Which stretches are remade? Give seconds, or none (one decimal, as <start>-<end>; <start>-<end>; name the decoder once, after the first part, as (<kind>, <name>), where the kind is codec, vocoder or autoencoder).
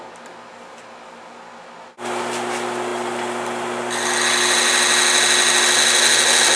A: none